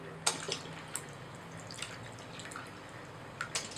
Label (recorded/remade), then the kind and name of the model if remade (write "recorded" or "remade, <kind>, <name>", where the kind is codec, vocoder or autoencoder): recorded